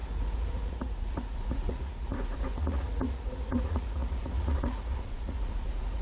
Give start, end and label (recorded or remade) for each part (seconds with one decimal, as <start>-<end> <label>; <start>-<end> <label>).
0.0-6.0 remade